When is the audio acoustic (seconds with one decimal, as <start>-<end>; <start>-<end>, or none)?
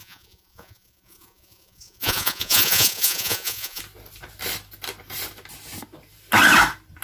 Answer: 3.8-7.0